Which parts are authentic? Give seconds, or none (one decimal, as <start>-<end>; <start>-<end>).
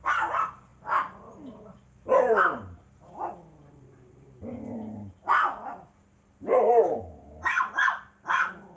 0.0-8.8